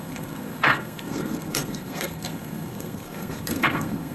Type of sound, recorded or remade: remade